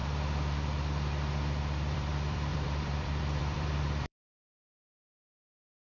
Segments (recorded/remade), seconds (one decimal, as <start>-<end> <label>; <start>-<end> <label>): 0.0-1.6 recorded; 1.6-5.8 remade